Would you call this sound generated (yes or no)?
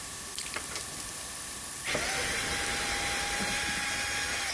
yes